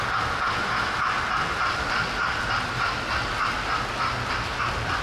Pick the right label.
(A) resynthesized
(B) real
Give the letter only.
B